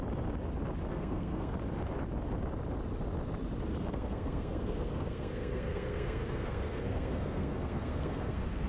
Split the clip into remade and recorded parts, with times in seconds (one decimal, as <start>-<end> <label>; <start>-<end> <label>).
0.0-0.9 recorded; 0.9-1.5 remade; 1.5-3.9 recorded; 3.9-8.7 remade